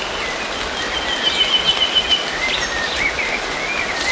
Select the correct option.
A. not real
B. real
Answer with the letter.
B